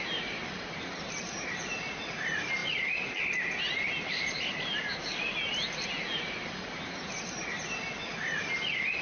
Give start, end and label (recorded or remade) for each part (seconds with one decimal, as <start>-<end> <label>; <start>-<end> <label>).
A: 0.0-9.0 recorded